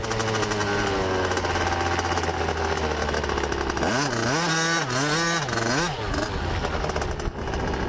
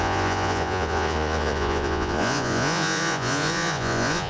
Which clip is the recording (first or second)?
first